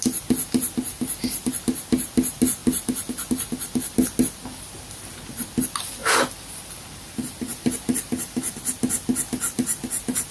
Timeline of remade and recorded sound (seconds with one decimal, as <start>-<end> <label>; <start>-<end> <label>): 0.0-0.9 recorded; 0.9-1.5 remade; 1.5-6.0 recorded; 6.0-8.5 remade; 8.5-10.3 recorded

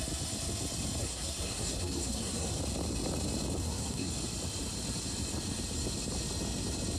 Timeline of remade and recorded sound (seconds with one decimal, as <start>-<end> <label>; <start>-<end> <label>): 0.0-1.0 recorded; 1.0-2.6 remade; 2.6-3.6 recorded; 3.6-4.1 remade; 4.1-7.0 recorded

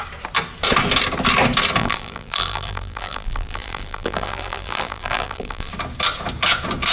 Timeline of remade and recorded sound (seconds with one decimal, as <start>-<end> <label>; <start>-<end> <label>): 0.0-1.8 recorded; 1.8-5.7 remade; 5.7-6.9 recorded

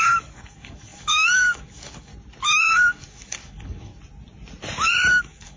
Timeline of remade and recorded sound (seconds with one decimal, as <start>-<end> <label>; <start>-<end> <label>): 0.0-2.1 remade; 2.1-2.7 recorded; 2.7-3.9 remade; 3.9-5.1 recorded; 5.1-5.6 remade

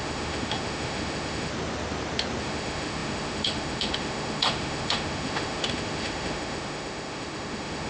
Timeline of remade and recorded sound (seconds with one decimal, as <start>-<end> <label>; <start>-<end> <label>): 0.0-1.5 remade; 1.5-2.4 recorded; 2.4-7.9 remade

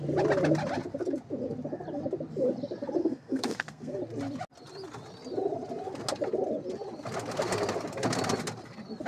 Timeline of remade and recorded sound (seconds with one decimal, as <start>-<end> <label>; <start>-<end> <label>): 0.0-3.0 recorded; 3.0-4.0 remade; 4.0-9.1 recorded

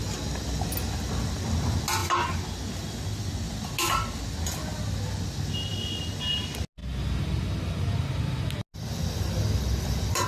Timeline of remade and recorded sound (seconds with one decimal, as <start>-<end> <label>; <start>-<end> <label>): 0.0-10.3 recorded